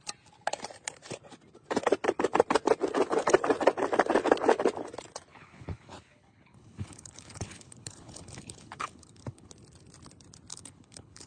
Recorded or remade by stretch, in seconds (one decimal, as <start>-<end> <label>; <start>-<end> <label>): 0.0-5.3 recorded; 5.3-9.5 remade; 9.5-10.5 recorded; 10.5-11.3 remade